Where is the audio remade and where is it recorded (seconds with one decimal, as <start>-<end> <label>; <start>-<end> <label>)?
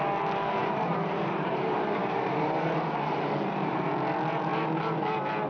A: 0.0-0.6 recorded; 0.6-3.9 remade; 3.9-5.5 recorded